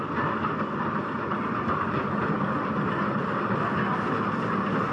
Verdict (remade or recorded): recorded